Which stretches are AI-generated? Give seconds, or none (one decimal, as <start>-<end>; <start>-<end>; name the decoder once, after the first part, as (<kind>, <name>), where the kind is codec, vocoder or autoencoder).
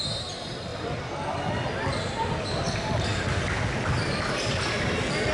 none